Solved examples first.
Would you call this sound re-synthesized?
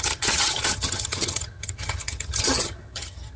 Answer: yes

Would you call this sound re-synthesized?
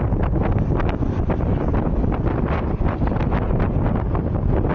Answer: no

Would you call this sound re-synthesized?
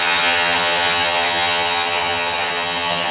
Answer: yes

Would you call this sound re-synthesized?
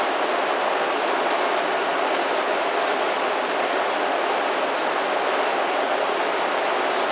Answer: no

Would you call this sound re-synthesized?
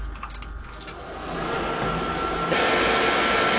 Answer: no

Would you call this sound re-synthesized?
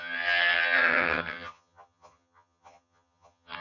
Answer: yes